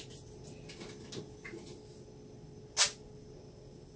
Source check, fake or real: real